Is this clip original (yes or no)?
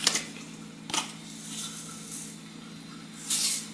yes